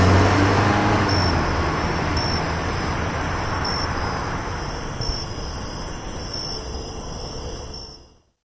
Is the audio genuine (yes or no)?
yes